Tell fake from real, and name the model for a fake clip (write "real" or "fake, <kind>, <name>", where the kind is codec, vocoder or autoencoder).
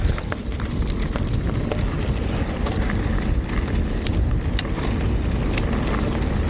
real